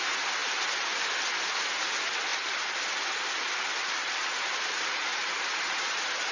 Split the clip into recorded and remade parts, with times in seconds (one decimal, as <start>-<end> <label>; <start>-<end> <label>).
0.0-2.3 recorded; 2.3-4.8 remade; 4.8-6.3 recorded

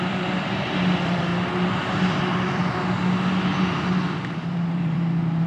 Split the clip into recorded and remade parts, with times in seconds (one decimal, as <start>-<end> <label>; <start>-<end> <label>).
0.0-1.3 remade; 1.3-1.9 recorded; 1.9-2.6 remade; 2.6-3.6 recorded; 3.6-5.5 remade

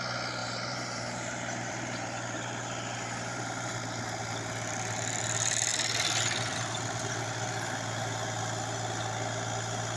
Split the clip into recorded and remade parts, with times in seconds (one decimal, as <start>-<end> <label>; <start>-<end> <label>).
0.0-0.4 recorded; 0.4-3.8 remade; 3.8-10.0 recorded

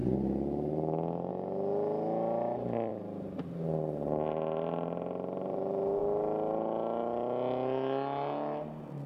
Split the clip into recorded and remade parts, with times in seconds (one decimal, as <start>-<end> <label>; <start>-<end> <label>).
0.0-1.3 remade; 1.3-2.9 recorded; 2.9-6.0 remade; 6.0-9.1 recorded

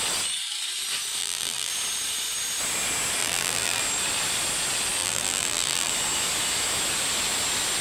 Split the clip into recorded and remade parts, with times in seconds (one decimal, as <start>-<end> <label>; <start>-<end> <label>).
0.0-1.2 recorded; 1.2-1.7 remade; 1.7-3.2 recorded; 3.2-3.8 remade; 3.8-5.0 recorded; 5.0-5.9 remade; 5.9-7.8 recorded